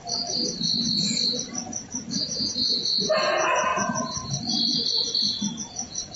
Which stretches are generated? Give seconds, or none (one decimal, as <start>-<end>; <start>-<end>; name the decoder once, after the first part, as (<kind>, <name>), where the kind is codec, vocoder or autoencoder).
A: 2.2-3.7 (vocoder, Vocos); 5.6-6.2